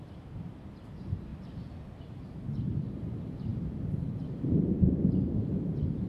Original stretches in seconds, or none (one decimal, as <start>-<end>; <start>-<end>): 1.3-2.0